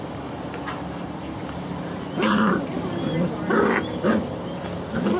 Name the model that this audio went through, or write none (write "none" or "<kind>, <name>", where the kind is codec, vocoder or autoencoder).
none